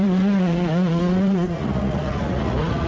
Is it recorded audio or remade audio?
remade